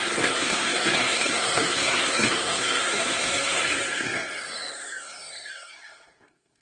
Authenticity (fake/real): fake